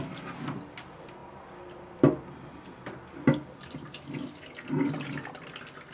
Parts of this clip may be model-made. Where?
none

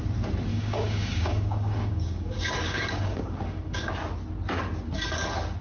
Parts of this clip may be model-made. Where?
0.5-3.9 (codec, DAC)

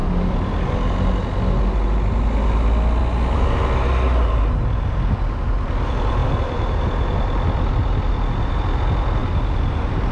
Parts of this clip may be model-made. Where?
none

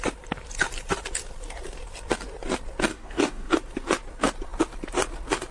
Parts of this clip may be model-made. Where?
2.9-3.5 (codec, DAC)